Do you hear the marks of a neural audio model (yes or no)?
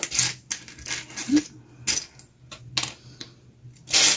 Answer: no